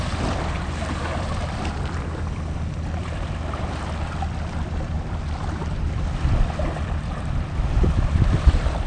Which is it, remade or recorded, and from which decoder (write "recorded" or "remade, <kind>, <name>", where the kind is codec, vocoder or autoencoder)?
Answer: remade, vocoder, BigVGAN v2